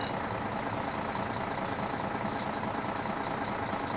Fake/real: real